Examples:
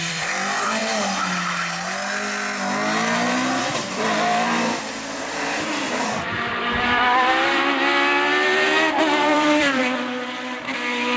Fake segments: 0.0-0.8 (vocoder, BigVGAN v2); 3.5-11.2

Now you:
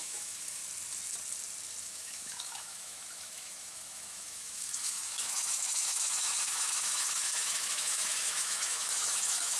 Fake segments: 0.0-0.6 (autoencoder, DAC-VAE); 1.8-9.6

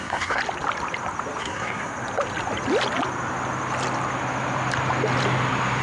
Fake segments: 0.0-0.4 (codec, SNAC); 1.4-1.9

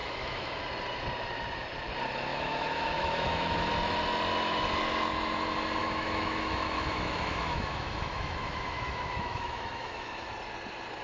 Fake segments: 0.0-0.6 (autoencoder, DAC-VAE); 2.3-3.7; 5.8-10.3

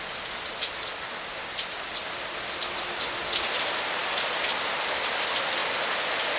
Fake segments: none